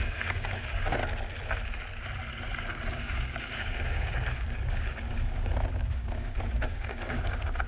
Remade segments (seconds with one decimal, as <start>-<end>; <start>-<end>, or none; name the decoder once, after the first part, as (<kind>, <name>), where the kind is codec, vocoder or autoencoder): 0.0-1.0 (codec, DAC); 2.6-7.7